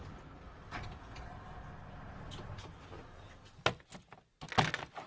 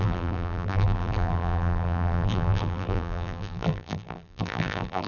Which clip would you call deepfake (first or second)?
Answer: second